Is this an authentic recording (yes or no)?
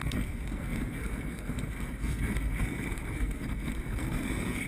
no